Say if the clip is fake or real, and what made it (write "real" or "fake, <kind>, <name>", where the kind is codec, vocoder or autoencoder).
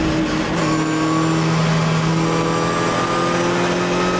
real